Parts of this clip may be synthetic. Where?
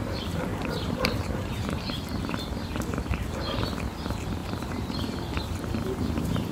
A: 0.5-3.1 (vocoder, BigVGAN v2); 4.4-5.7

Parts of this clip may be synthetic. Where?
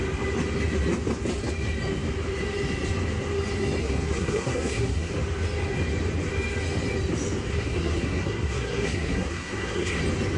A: 3.8-5.1 (codec, SNAC); 7.5-10.0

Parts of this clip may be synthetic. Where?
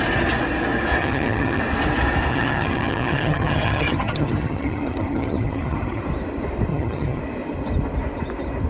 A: 1.0-1.6 (vocoder, HiFi-GAN); 2.3-6.0; 6.7-7.2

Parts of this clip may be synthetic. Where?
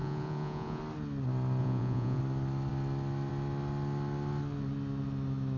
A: 0.0-0.8 (vocoder, Vocos); 1.6-2.2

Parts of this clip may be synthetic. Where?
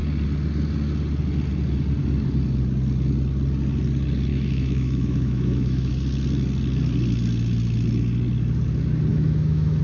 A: 4.3-5.9 (autoencoder, DAC-VAE); 9.1-9.8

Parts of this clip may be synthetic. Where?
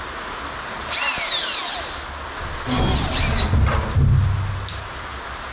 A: 1.4-2.2 (vocoder, BigVGAN v2)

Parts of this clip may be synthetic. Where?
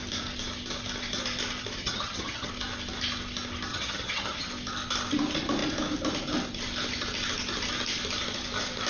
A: 1.8-2.5 (vocoder, HiFi-GAN); 3.7-4.5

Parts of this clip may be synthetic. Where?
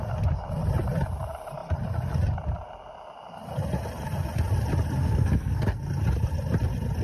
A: 5.0-5.8 (codec, SNAC)